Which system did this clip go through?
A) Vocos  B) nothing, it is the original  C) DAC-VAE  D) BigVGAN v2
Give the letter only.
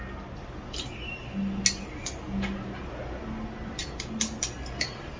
B